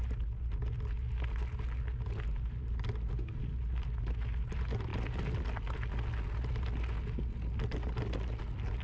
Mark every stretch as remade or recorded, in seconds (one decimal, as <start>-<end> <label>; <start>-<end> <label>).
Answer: 0.0-8.8 recorded